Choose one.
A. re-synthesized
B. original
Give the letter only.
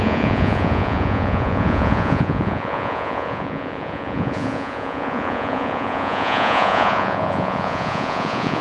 A